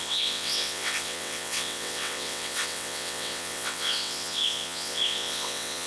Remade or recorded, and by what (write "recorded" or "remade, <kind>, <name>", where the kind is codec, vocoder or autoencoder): remade, vocoder, WaveNeXt